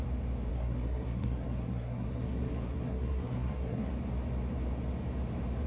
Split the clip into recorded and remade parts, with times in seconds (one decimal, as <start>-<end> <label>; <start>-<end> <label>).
0.0-0.5 recorded; 0.5-3.9 remade; 3.9-5.7 recorded